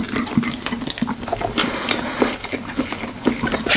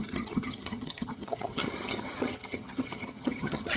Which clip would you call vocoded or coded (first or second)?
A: second